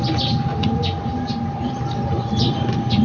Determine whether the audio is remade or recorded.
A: recorded